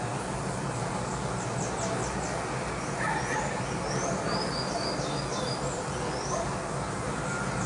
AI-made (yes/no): no